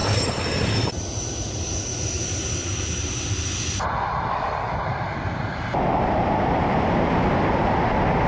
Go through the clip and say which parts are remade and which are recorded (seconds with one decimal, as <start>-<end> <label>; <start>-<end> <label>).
0.0-0.9 remade; 0.9-1.9 recorded; 1.9-3.4 remade; 3.4-8.3 recorded

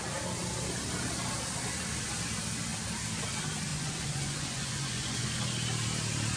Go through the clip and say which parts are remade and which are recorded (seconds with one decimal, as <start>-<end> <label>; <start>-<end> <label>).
0.0-3.7 recorded; 3.7-5.4 remade; 5.4-6.4 recorded

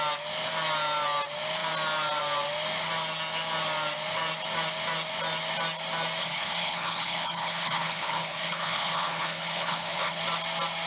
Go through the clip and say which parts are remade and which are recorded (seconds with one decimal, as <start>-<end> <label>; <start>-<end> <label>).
0.0-6.2 recorded; 6.2-10.2 remade; 10.2-10.9 recorded

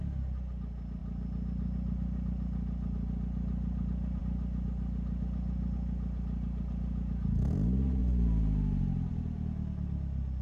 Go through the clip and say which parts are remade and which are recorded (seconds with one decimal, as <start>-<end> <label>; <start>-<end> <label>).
0.0-10.4 recorded

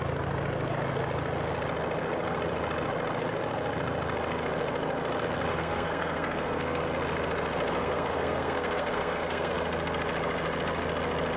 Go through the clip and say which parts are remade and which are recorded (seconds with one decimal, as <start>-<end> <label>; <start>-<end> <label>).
0.0-5.5 recorded; 5.5-6.8 remade; 6.8-7.8 recorded; 7.8-9.5 remade; 9.5-11.4 recorded

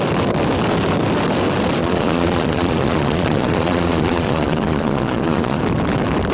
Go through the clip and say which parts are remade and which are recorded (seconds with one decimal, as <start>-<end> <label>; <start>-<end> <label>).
0.0-1.8 recorded; 1.8-5.6 remade; 5.6-6.3 recorded